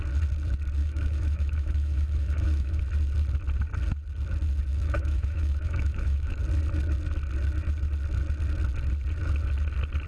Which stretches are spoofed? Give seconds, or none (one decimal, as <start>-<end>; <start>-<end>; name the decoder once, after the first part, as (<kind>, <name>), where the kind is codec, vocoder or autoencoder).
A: 0.8-2.8 (autoencoder, DAC-VAE); 4.7-6.3